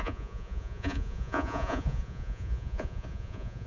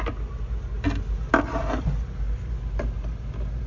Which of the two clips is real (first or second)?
second